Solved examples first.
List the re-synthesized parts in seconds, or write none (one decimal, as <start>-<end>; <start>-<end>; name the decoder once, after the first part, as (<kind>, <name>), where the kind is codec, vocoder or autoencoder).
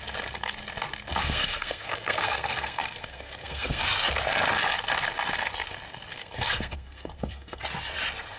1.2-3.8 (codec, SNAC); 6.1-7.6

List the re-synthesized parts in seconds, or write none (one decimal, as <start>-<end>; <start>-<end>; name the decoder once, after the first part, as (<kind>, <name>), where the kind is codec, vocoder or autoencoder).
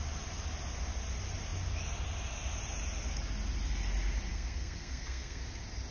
4.3-5.4 (codec, SNAC)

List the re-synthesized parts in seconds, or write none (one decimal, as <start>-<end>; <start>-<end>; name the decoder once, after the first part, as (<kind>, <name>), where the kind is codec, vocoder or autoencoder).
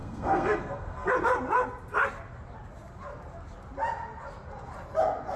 0.0-1.1 (codec, SNAC)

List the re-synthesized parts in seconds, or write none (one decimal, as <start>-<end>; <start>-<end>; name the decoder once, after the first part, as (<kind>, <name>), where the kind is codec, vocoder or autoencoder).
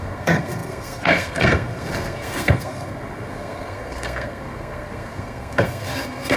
0.0-6.4 (codec, SNAC)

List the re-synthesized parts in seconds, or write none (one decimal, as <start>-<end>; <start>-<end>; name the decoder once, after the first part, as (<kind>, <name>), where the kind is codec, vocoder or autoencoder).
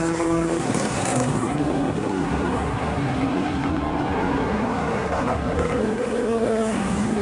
0.0-7.2 (codec, SNAC)